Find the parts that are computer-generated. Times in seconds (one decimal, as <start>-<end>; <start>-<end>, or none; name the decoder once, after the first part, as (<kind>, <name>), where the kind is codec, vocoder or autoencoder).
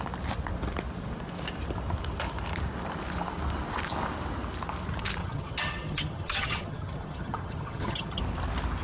5.2-8.2 (vocoder, HiFi-GAN)